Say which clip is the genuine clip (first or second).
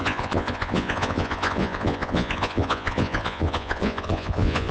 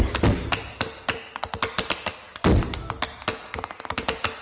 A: second